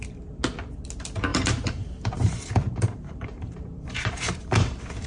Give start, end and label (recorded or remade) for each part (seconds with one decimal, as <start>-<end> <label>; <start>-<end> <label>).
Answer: 0.0-1.3 recorded; 1.3-4.4 remade; 4.4-5.1 recorded